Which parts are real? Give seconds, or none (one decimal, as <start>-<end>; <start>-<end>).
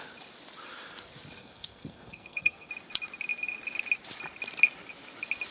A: 0.0-1.4; 2.7-5.5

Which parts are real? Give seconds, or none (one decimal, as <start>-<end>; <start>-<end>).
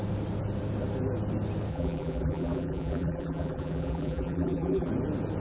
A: 0.0-1.7; 4.9-5.4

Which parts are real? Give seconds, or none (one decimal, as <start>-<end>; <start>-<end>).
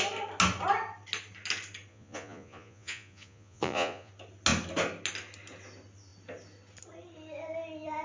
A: 0.0-1.9; 4.1-8.0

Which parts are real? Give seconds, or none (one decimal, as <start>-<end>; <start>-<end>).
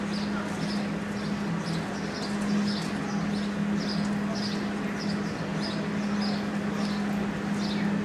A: 0.0-8.0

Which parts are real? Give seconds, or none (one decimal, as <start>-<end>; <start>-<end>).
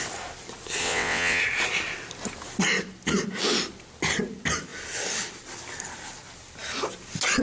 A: 0.0-0.8; 1.4-7.4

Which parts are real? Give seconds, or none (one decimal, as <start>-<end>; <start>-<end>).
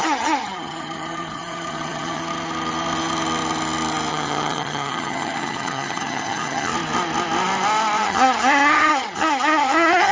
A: 2.2-4.1; 6.7-8.0